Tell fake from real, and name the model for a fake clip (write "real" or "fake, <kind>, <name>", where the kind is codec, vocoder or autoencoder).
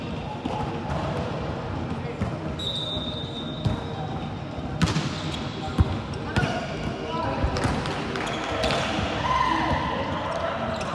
real